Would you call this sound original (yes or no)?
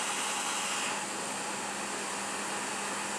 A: yes